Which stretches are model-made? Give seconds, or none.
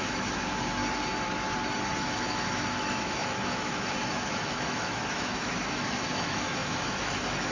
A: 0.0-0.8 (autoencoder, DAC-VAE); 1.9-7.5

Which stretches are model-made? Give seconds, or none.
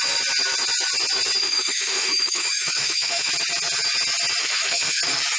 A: 1.4-3.3 (autoencoder, DAC-VAE); 4.4-5.0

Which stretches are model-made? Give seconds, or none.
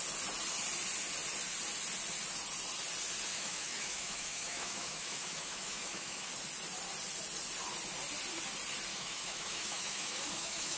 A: 3.3-6.3 (autoencoder, DAC-VAE); 8.9-10.8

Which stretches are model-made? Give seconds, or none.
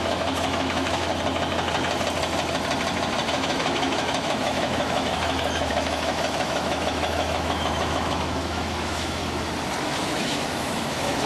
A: 0.0-1.1 (autoencoder, DAC-VAE); 3.3-9.2; 10.0-11.3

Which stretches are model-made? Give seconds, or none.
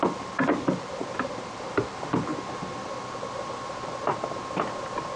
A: none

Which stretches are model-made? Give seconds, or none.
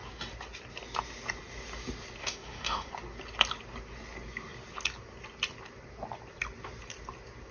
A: 2.2-2.9 (autoencoder, DAC-VAE)